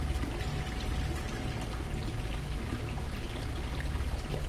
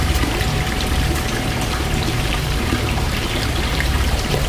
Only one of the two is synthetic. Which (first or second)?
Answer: second